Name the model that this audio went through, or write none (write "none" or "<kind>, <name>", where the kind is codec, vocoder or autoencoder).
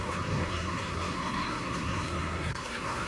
codec, SNAC